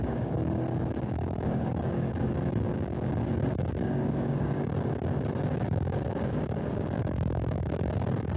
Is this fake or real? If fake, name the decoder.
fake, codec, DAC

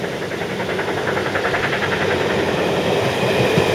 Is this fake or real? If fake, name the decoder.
real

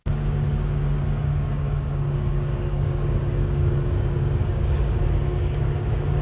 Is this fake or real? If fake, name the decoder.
fake, codec, DAC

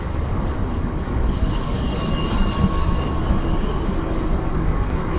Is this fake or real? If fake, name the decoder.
fake, codec, DAC